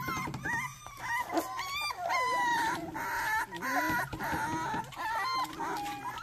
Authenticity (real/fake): real